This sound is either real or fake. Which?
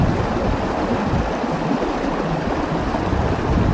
real